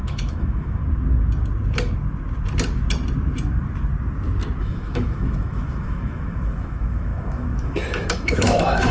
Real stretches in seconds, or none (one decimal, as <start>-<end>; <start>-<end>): 0.8-4.6